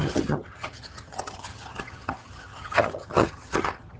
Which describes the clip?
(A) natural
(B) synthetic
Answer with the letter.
B